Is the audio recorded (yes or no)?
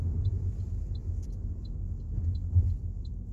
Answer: no